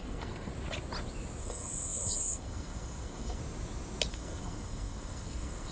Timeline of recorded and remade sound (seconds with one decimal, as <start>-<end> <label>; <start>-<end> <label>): 0.0-0.5 remade; 0.5-1.4 recorded; 1.4-3.4 remade; 3.4-4.1 recorded; 4.1-5.7 remade